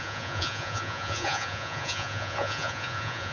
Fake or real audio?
fake